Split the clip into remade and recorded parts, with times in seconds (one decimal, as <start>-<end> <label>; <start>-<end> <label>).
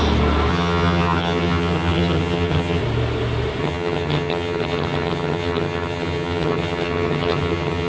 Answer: 0.0-0.5 recorded; 0.5-2.8 remade; 2.8-3.6 recorded; 3.6-7.9 remade